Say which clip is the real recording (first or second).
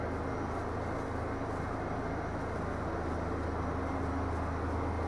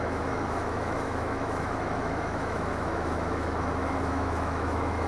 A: first